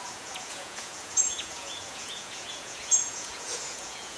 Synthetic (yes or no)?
yes